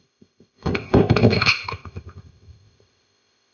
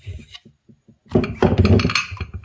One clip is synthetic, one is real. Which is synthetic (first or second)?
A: first